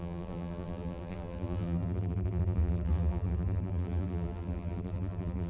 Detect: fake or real fake